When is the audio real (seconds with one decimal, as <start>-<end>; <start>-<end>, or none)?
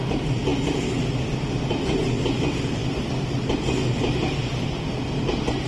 0.0-5.7